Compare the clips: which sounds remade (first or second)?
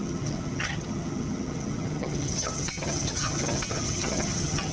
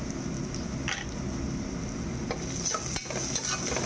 first